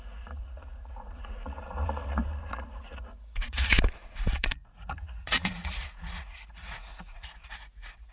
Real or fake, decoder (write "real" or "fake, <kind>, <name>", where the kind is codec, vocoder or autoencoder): fake, vocoder, Vocos